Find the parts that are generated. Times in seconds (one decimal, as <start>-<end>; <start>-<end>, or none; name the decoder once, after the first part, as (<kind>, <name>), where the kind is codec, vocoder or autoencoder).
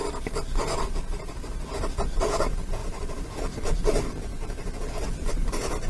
2.8-3.4 (vocoder, BigVGAN v2)